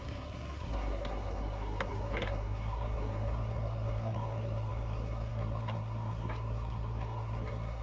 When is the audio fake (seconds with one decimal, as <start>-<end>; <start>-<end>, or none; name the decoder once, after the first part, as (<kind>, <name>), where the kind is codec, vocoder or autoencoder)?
0.0-7.8 (codec, SNAC)